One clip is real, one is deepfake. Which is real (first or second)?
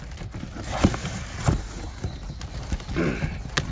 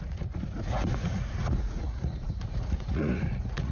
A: first